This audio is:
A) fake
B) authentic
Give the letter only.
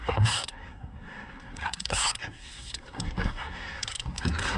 A